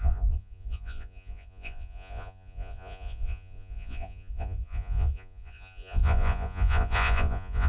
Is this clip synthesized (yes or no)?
yes